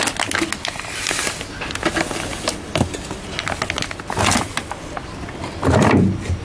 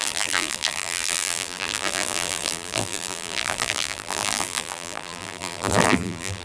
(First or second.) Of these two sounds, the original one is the first